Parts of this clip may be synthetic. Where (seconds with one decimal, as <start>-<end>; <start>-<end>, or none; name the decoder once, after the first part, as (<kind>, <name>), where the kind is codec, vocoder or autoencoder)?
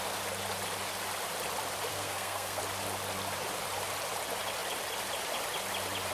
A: 1.9-2.6 (codec, SNAC)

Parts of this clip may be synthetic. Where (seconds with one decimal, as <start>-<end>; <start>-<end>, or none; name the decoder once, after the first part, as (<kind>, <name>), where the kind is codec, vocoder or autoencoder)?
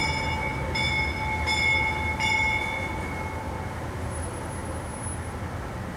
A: none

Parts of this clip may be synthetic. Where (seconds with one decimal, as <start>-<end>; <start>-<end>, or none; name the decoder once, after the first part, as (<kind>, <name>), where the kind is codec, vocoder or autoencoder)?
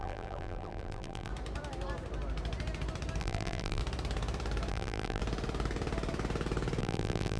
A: 0.0-1.3 (vocoder, BigVGAN v2); 3.2-3.8; 4.7-5.2; 6.8-7.4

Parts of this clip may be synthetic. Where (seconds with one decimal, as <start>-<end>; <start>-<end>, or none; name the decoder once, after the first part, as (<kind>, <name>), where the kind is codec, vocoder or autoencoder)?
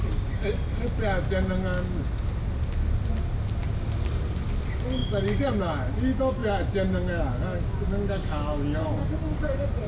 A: none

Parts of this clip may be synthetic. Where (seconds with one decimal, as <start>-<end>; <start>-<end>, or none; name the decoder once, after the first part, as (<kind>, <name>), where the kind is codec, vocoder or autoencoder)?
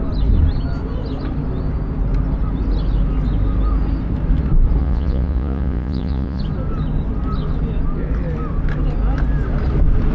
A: 4.8-6.4 (vocoder, Vocos)